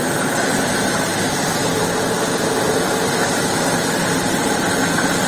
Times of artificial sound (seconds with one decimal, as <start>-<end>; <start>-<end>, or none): 0.0-1.1; 4.3-5.3

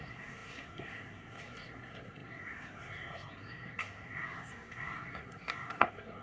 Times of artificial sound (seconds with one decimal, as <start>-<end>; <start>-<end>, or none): 0.0-6.2